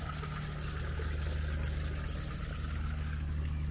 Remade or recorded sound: recorded